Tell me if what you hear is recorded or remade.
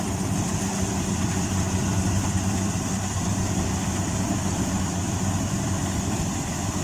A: remade